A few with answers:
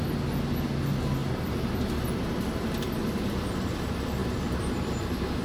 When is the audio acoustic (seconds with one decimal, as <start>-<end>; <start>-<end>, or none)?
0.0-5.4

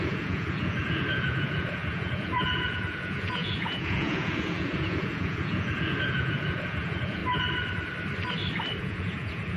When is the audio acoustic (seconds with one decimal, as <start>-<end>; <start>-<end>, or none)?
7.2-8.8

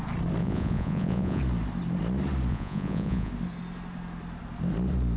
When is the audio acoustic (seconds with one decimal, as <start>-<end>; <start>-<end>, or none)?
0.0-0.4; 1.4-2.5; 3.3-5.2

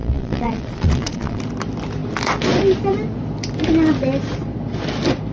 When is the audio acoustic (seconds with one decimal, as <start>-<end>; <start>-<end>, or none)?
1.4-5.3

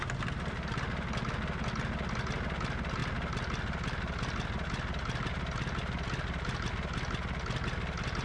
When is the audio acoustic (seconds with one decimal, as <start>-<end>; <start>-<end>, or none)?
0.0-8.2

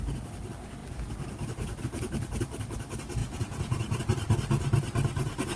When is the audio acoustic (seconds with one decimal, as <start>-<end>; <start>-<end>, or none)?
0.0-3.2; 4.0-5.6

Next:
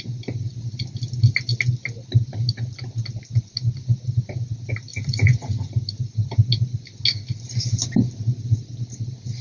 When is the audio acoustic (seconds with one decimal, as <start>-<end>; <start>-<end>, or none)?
0.0-4.9; 5.7-9.4

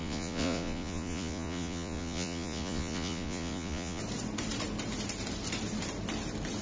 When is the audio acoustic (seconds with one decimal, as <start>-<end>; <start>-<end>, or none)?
4.0-6.6